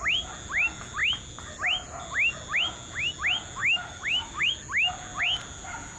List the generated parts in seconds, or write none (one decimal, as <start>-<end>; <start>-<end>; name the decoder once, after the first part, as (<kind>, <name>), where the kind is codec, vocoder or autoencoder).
3.6-4.5 (codec, DAC)